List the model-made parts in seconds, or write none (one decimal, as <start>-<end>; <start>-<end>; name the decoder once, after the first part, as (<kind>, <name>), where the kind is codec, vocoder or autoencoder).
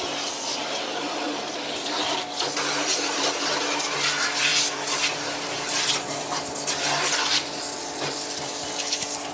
none